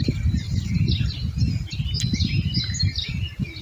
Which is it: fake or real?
real